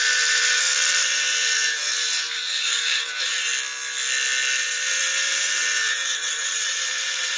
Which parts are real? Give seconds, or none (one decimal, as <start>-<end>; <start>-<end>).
3.5-4.6